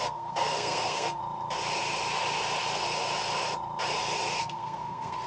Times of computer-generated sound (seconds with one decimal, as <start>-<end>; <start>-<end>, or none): 0.0-1.2; 4.4-5.3